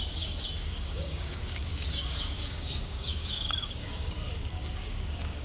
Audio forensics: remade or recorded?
remade